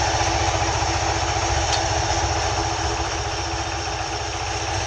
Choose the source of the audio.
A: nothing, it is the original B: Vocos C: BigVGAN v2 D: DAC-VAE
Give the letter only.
A